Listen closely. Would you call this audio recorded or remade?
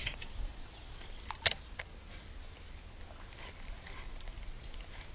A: recorded